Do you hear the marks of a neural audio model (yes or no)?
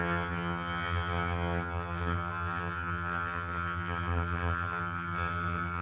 yes